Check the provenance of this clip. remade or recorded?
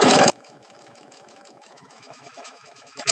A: remade